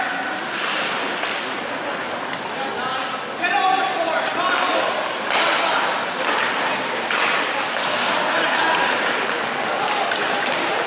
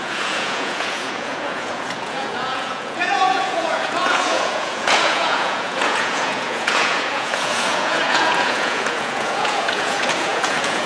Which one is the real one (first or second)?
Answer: first